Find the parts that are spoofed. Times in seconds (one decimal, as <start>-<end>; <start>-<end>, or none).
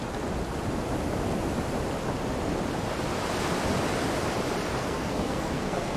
4.8-6.0